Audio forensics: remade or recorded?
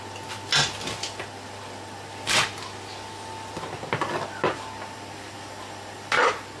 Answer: recorded